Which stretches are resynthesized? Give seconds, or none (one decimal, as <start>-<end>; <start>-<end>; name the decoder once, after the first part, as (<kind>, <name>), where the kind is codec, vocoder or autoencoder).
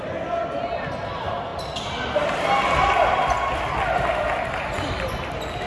none